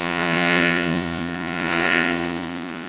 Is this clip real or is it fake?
fake